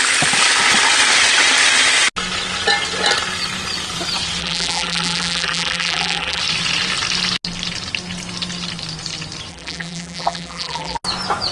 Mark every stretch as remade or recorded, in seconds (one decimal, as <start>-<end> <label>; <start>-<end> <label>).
0.0-4.4 recorded; 4.4-6.4 remade; 6.4-9.5 recorded; 9.5-11.0 remade; 11.0-11.5 recorded

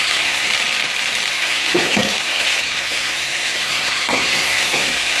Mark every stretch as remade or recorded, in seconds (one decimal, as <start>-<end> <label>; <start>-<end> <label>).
0.0-0.5 remade; 0.5-1.3 recorded; 1.3-5.2 remade